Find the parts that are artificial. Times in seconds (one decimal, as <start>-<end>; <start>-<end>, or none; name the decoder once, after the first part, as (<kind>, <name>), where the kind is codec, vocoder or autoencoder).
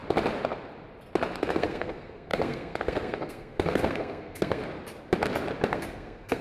1.4-4.6 (codec, SNAC); 5.7-6.4